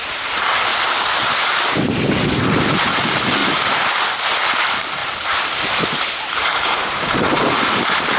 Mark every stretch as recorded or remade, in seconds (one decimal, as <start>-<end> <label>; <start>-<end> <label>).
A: 0.0-3.4 recorded; 3.4-4.0 remade; 4.0-5.0 recorded; 5.0-7.5 remade; 7.5-8.2 recorded